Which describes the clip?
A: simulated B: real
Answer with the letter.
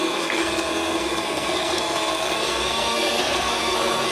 A